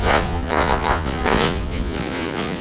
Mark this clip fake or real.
fake